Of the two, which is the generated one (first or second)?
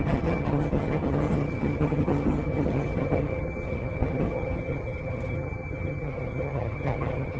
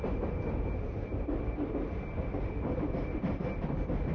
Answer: first